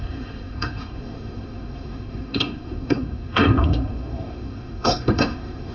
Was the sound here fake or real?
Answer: fake